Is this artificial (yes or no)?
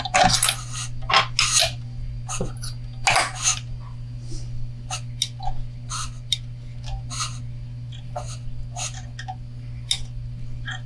no